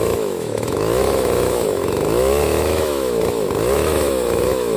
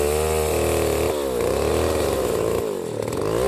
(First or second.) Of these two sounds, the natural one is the second